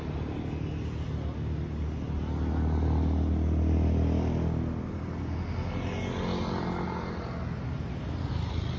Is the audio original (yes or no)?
yes